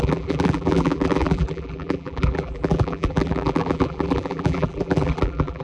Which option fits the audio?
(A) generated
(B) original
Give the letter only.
A